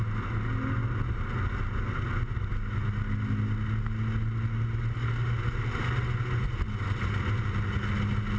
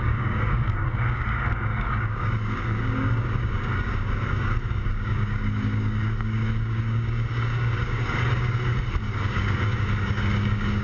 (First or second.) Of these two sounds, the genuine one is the first